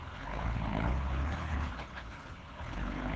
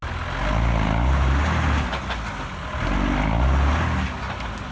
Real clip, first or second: second